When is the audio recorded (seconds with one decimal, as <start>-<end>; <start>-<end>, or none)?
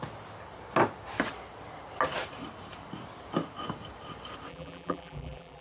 0.0-4.5